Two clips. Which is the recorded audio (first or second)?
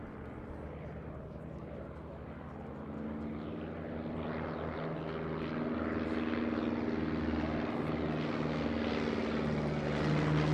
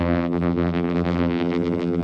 first